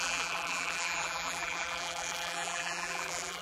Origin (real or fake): fake